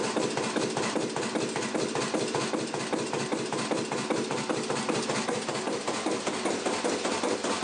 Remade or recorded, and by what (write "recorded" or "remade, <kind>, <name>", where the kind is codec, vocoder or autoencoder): recorded